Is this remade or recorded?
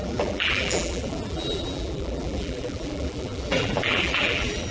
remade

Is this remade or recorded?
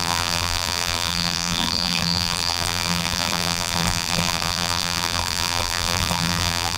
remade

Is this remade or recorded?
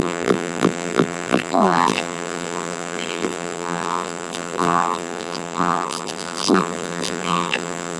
remade